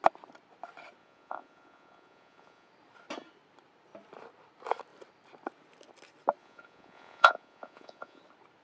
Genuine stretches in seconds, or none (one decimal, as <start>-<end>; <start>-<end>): 0.0-1.0; 2.7-6.4; 8.2-8.6